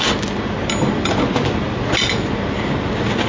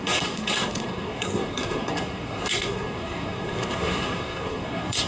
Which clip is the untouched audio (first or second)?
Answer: first